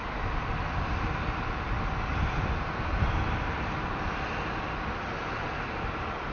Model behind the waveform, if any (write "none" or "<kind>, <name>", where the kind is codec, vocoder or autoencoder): none